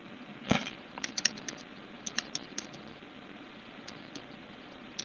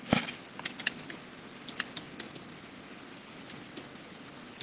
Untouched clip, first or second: second